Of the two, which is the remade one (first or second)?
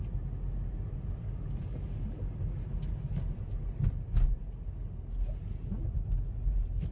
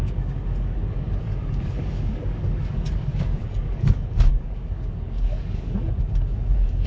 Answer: second